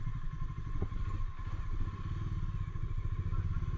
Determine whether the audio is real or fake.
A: real